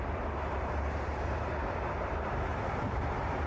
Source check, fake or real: fake